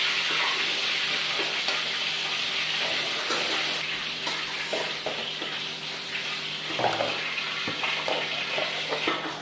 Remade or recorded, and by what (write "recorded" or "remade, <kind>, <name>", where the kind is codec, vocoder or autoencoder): recorded